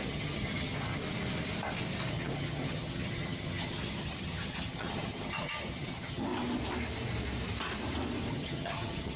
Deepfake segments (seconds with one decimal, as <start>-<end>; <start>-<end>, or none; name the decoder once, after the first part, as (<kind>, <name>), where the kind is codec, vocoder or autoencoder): 0.0-1.0 (vocoder, HiFi-GAN); 2.1-6.3; 8.3-9.2